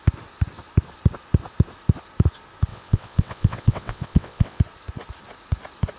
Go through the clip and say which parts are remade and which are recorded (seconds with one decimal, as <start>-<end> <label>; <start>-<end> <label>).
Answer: 0.0-2.7 recorded; 2.7-4.6 remade; 4.6-6.0 recorded